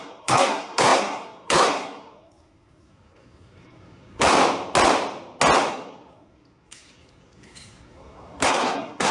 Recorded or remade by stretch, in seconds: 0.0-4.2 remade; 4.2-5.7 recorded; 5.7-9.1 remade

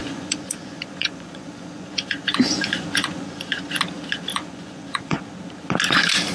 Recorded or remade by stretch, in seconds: 0.0-3.8 remade; 3.8-4.3 recorded; 4.3-5.2 remade; 5.2-6.3 recorded

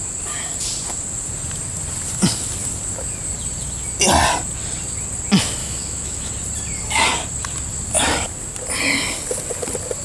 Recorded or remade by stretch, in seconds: 0.0-5.6 recorded; 5.6-6.3 remade; 6.3-10.0 recorded

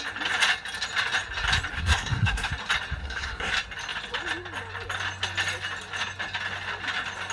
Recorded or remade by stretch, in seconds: 0.0-1.7 recorded; 1.7-2.5 remade; 2.5-3.0 recorded; 3.0-3.5 remade; 3.5-7.3 recorded

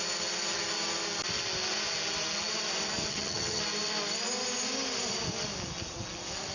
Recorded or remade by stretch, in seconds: 0.0-3.1 recorded; 3.1-3.6 remade; 3.6-6.5 recorded

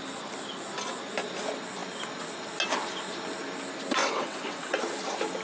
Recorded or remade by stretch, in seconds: 0.0-4.0 recorded; 4.0-4.8 remade; 4.8-5.4 recorded

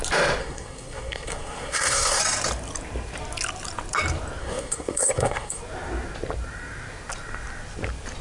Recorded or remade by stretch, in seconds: 0.0-0.4 recorded; 0.4-2.2 remade; 2.2-4.4 recorded; 4.4-5.6 remade; 5.6-8.2 recorded